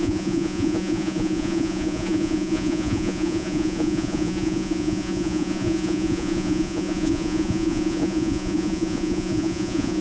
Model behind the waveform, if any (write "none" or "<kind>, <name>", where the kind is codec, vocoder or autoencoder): vocoder, Vocos